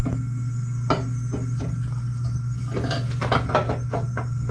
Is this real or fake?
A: real